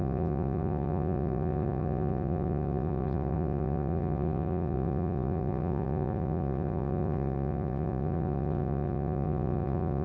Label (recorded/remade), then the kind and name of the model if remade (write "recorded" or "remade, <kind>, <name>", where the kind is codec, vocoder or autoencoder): remade, vocoder, Vocos